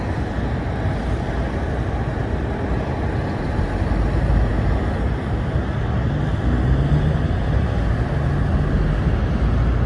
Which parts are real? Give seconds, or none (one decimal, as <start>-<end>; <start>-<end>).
0.0-9.9